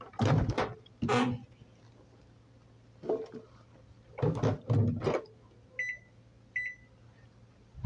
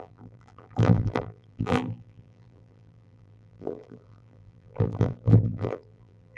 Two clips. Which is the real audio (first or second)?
first